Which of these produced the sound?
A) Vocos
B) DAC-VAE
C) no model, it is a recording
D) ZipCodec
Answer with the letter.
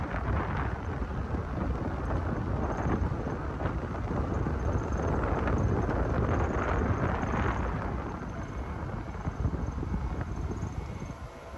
C